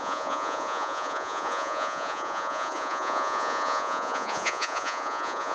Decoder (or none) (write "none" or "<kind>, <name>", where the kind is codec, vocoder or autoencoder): vocoder, Vocos